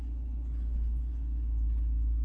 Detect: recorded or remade recorded